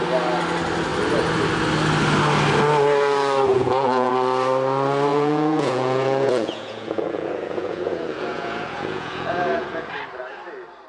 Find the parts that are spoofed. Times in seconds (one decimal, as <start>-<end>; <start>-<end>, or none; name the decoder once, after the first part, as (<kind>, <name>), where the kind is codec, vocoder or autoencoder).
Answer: 3.5-4.1 (vocoder, Vocos); 5.1-9.9